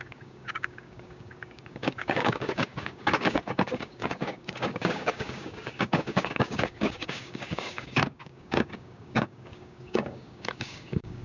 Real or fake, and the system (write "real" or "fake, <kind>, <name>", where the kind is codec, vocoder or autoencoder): fake, codec, DAC